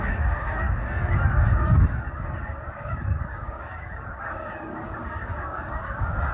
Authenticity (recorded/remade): remade